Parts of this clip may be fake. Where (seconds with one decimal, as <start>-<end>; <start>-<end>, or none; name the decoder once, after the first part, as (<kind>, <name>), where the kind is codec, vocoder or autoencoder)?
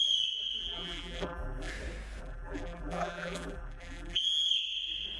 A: 0.6-1.7 (vocoder, BigVGAN v2); 2.2-4.5